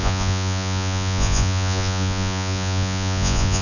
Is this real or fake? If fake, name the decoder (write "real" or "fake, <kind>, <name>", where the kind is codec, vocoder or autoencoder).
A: fake, vocoder, Vocos